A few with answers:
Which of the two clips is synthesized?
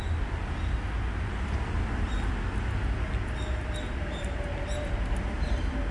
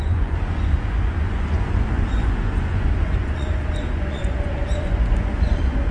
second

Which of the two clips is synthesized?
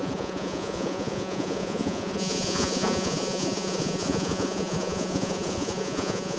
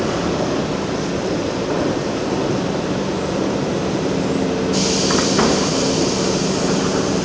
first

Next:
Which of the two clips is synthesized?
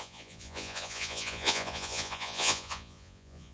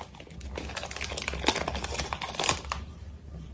first